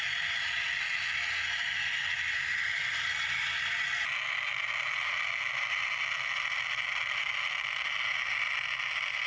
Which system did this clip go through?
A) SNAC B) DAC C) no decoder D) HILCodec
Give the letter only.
C